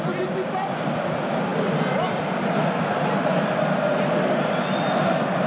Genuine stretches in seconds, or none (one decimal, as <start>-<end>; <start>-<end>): 0.0-5.5